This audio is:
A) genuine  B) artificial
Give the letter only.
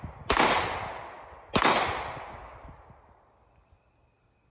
A